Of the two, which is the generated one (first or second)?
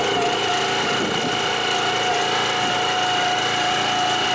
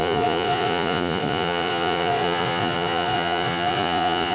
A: second